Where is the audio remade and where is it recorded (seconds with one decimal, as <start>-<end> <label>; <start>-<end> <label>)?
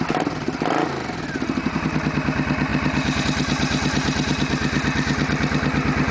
0.0-6.1 recorded